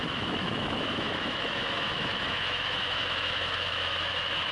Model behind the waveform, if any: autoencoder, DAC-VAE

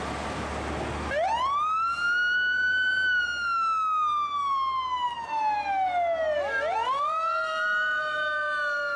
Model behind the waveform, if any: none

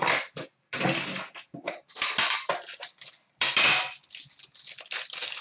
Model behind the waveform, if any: none